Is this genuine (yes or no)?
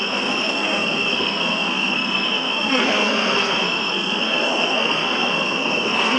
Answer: no